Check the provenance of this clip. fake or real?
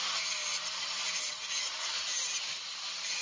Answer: real